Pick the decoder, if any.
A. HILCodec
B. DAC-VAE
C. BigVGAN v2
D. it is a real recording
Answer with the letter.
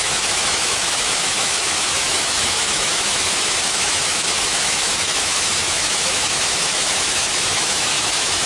B